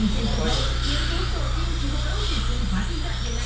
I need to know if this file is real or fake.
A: real